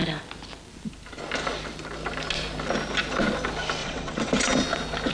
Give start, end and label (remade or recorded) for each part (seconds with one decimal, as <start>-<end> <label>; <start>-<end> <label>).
0.0-3.8 recorded; 3.8-4.3 remade; 4.3-5.1 recorded